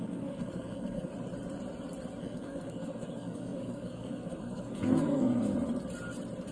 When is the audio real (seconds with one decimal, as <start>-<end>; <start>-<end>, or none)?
1.1-2.2; 5.5-6.5